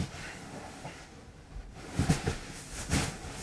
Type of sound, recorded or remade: recorded